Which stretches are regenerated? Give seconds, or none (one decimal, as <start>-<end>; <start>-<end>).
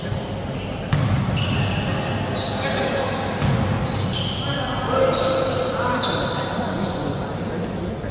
6.6-7.2